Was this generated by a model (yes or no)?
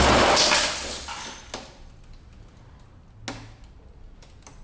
no